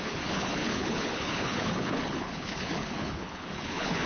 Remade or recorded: remade